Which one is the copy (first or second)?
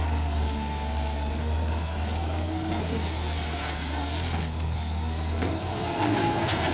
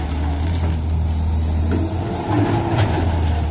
first